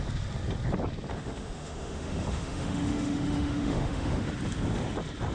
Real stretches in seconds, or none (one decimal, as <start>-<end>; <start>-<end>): 0.0-1.1; 4.3-5.3